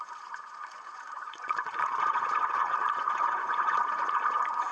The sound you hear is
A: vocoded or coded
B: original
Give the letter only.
A